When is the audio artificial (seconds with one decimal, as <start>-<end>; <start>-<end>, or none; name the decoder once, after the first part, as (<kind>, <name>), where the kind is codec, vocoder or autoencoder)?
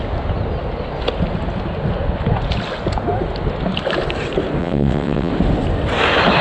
4.6-5.3 (vocoder, WaveNeXt)